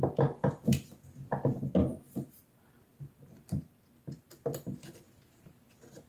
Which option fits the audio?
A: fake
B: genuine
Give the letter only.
B